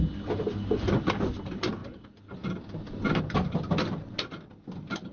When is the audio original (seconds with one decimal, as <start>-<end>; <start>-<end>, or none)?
0.0-5.1